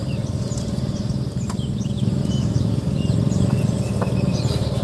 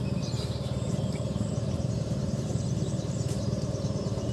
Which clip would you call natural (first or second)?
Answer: first